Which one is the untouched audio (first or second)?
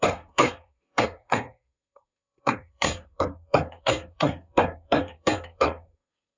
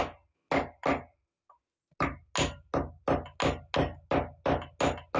second